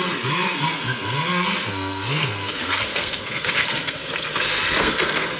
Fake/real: fake